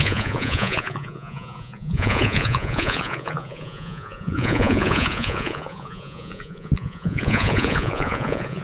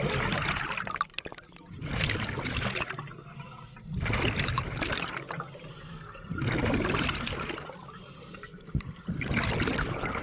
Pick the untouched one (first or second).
second